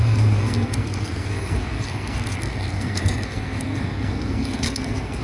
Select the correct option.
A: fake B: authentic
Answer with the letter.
A